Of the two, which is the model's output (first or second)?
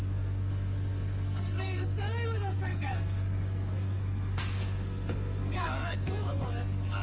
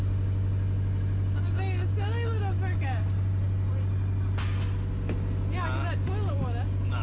first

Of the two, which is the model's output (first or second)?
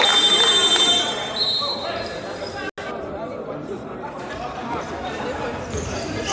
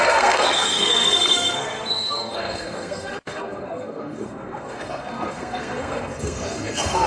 second